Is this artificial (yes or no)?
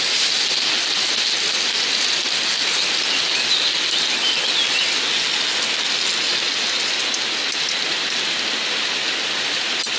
no